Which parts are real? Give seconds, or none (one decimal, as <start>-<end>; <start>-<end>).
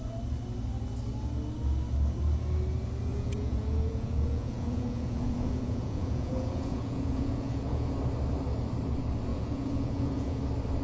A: 0.0-3.1; 8.0-9.3; 10.4-10.8